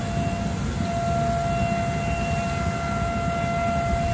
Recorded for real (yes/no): yes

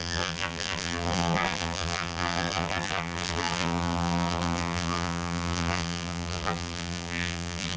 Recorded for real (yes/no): no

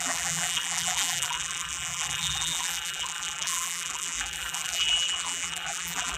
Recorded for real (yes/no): no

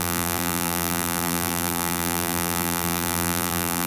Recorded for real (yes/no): no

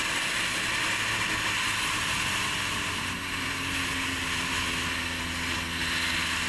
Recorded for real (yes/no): yes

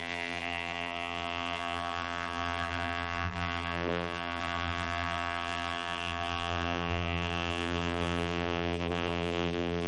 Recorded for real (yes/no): no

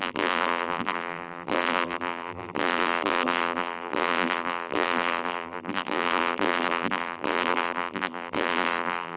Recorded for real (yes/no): no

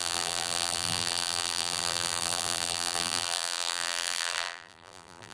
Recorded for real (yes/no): no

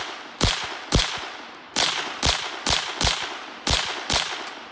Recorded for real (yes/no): yes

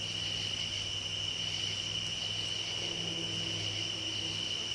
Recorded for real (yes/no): yes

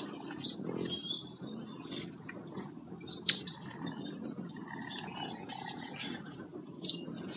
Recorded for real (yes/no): yes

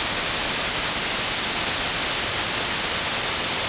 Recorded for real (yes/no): yes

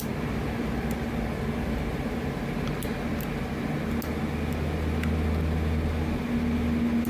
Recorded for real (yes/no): yes